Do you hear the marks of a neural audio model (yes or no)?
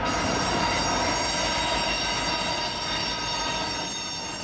no